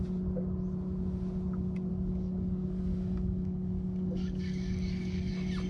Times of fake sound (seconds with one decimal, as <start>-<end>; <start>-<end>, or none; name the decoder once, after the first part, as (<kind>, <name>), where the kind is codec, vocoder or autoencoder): 1.9-5.3 (codec, DAC)